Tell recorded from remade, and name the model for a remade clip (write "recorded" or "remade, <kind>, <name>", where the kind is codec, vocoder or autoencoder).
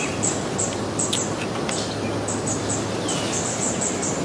recorded